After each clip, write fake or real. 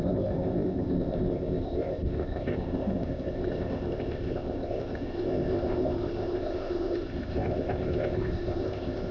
fake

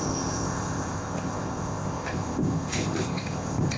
fake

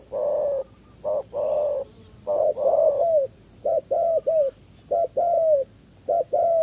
real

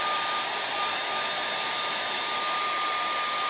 real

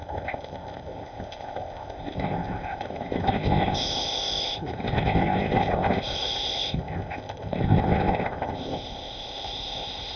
fake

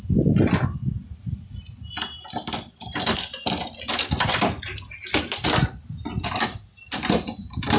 real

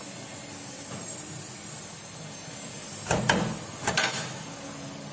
real